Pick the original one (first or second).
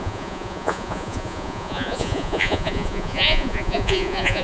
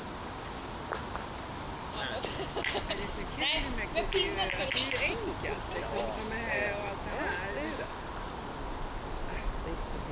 second